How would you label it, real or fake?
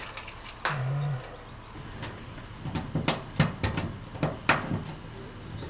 real